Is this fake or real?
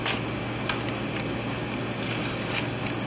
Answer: real